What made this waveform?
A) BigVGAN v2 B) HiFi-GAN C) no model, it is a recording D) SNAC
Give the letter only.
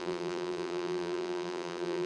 A